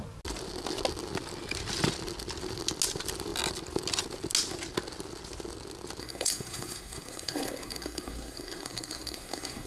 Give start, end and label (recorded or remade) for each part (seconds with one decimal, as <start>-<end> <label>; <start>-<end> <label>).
0.0-6.0 recorded; 6.0-9.7 remade

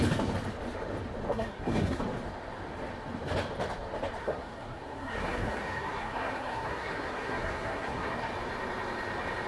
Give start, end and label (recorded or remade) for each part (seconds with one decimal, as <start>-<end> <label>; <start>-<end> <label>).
0.0-1.3 recorded; 1.3-2.0 remade; 2.0-4.2 recorded; 4.2-8.3 remade; 8.3-9.5 recorded